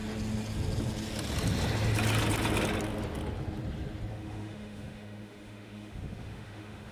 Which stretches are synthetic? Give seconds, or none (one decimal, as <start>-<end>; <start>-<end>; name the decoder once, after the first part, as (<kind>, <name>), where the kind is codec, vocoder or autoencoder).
4.1-6.9 (autoencoder, DAC-VAE)